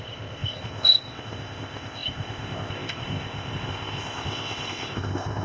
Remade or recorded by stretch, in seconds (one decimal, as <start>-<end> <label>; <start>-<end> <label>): 0.0-5.4 remade